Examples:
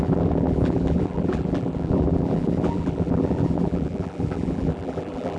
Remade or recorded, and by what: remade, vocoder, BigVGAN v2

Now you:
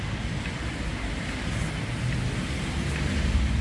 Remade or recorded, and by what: recorded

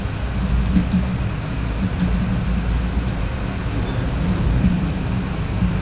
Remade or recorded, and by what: recorded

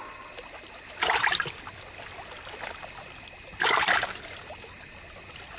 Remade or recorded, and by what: recorded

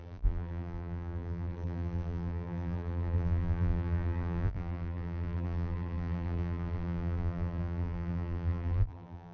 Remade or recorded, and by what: remade, vocoder, BigVGAN v2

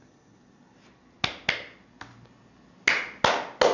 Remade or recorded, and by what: recorded